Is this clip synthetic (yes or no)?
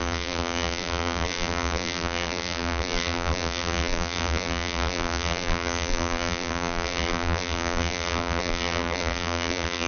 yes